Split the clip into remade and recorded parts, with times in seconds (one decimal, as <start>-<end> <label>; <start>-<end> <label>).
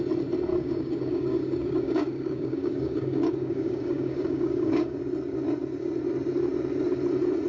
0.0-0.5 recorded; 0.5-5.0 remade; 5.0-7.5 recorded